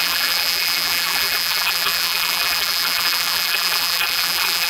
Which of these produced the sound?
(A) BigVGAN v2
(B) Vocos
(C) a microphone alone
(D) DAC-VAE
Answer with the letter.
A